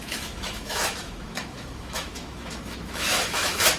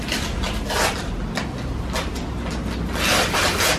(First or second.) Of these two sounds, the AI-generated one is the first